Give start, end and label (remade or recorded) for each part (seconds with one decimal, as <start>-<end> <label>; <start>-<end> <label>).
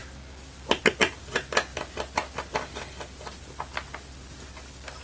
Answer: 0.0-5.0 recorded